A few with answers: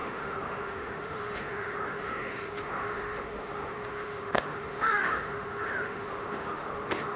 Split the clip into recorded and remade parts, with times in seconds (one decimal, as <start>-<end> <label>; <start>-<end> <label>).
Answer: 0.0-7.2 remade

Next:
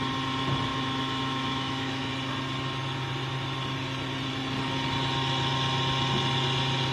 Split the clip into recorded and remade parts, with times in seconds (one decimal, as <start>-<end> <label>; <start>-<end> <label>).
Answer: 0.0-0.7 recorded; 0.7-2.1 remade; 2.1-6.9 recorded

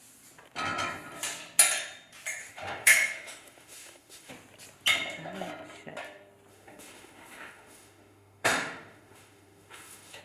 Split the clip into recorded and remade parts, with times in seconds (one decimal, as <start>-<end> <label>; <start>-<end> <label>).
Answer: 0.0-2.4 recorded; 2.4-4.3 remade; 4.3-6.5 recorded; 6.5-10.2 remade

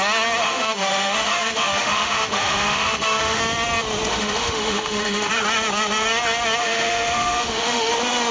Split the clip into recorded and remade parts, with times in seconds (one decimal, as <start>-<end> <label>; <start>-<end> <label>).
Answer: 0.0-0.4 recorded; 0.4-3.4 remade; 3.4-4.1 recorded; 4.1-5.3 remade; 5.3-6.6 recorded; 6.6-7.9 remade; 7.9-8.3 recorded